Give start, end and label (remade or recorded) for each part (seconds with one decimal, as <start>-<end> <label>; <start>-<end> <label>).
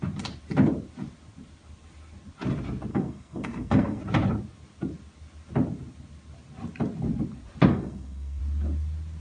0.0-2.9 recorded; 2.9-4.0 remade; 4.0-7.7 recorded; 7.7-8.4 remade; 8.4-9.2 recorded